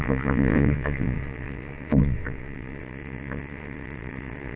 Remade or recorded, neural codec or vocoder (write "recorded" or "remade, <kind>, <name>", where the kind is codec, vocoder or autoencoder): remade, vocoder, WaveNeXt